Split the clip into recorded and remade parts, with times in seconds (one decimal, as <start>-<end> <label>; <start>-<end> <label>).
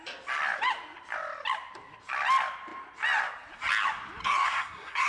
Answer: 0.0-4.2 recorded; 4.2-5.1 remade